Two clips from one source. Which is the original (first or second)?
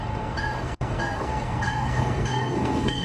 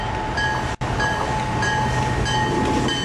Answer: second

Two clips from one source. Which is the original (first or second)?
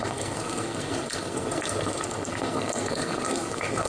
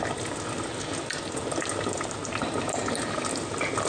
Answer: second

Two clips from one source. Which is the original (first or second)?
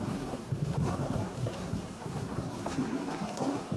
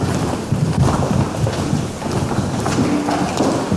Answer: second